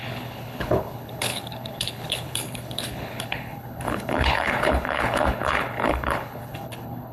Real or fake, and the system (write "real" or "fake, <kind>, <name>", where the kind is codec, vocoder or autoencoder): fake, codec, HILCodec